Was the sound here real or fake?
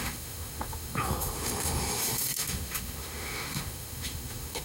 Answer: fake